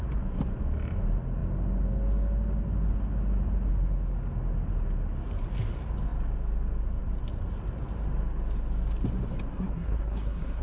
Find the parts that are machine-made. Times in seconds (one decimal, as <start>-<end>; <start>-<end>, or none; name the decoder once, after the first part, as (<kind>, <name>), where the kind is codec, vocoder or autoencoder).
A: 9.5-10.6 (codec, SNAC)

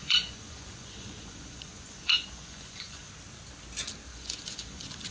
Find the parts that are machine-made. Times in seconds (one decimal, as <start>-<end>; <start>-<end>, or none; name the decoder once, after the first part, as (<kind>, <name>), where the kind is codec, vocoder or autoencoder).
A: 0.0-3.1 (vocoder, Vocos); 4.1-5.1

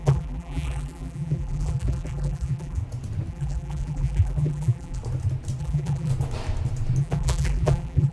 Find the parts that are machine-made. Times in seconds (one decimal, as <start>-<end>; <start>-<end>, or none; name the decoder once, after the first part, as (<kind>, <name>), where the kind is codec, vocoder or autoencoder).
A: 0.0-2.8 (vocoder, BigVGAN v2); 3.3-5.0; 5.6-6.1; 7.0-8.1

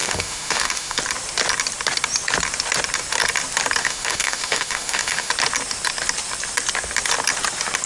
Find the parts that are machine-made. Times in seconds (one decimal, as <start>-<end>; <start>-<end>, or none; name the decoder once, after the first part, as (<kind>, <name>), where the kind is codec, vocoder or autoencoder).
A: 0.0-1.0 (autoencoder, DAC-VAE); 3.8-5.3

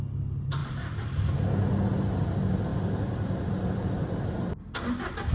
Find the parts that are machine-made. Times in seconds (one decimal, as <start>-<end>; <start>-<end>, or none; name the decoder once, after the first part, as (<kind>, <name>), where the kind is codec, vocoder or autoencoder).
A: 0.6-1.2 (vocoder, BigVGAN v2); 2.7-4.2

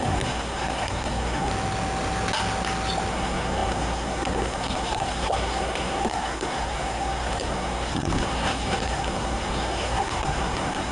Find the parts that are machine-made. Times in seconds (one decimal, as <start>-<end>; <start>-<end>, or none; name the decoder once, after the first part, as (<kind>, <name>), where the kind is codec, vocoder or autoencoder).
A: 0.0-1.5 (codec, SNAC); 3.1-10.9

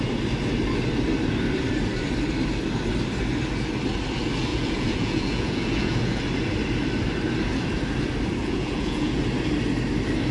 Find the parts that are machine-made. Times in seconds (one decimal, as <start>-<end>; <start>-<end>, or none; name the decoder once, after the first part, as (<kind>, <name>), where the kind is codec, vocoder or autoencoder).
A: 4.5-6.2 (vocoder, Vocos); 8.4-9.2